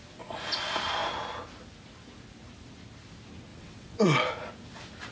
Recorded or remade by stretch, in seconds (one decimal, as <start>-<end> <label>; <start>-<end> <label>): 0.0-3.5 recorded; 3.5-4.2 remade; 4.2-5.1 recorded